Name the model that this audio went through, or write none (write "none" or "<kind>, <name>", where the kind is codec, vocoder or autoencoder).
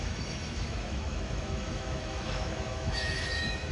autoencoder, DAC-VAE